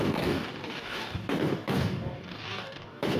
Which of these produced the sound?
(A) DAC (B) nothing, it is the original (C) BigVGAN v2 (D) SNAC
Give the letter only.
A